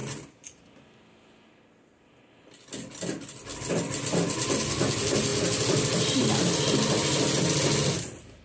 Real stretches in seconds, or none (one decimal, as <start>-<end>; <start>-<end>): 0.0-8.4